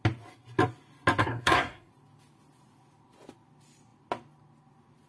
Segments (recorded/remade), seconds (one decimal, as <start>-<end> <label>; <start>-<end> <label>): 0.0-1.2 recorded; 1.2-1.9 remade; 1.9-5.1 recorded